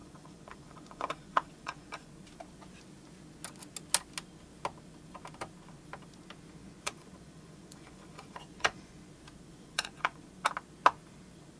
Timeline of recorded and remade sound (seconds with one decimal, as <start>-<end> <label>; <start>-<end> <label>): 0.0-2.1 remade; 2.1-6.6 recorded; 6.6-9.1 remade; 9.1-9.5 recorded; 9.5-10.2 remade; 10.2-11.6 recorded